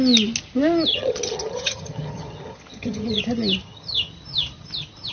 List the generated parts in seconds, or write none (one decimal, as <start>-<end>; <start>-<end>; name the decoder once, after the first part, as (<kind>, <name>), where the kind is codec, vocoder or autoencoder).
0.9-3.2 (vocoder, HiFi-GAN); 3.6-4.1